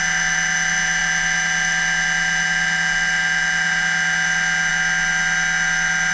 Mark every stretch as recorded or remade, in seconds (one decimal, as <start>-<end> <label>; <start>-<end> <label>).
0.0-6.1 recorded